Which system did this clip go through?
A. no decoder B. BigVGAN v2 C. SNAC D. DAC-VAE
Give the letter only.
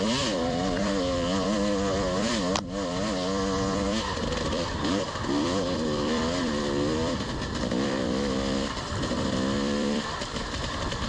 B